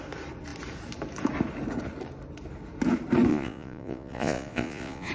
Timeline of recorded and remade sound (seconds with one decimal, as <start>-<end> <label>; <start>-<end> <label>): 0.0-3.3 recorded; 3.3-5.1 remade